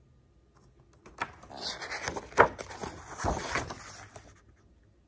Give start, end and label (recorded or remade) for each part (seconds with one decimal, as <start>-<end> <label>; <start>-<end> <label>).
0.0-5.1 recorded

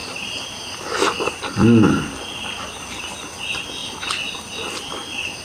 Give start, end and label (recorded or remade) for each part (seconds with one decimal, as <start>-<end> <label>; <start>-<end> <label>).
0.0-5.4 recorded